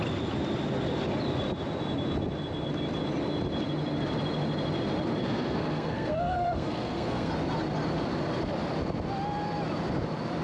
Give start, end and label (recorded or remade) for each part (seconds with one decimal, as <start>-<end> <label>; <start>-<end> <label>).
0.0-5.2 recorded; 5.2-7.3 remade; 7.3-10.4 recorded